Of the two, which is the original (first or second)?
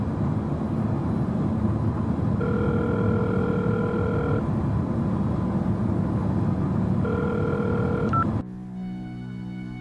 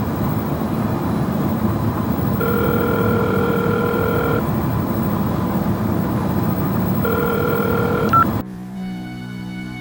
first